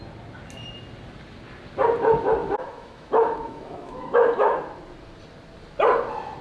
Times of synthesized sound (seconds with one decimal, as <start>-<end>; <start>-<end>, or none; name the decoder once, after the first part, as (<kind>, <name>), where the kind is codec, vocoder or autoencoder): 2.4-4.6 (autoencoder, DAC-VAE)